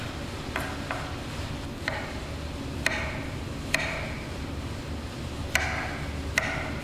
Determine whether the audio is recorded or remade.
recorded